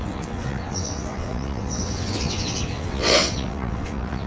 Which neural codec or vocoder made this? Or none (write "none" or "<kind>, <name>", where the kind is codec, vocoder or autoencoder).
vocoder, WaveNeXt